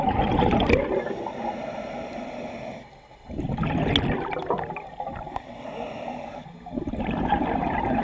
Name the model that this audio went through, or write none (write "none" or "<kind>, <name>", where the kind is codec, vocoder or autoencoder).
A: none